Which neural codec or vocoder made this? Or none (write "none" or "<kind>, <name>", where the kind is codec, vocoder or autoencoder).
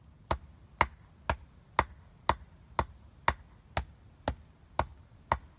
none